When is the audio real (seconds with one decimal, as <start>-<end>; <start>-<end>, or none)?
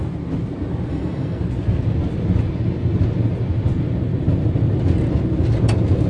0.0-0.9; 1.4-6.1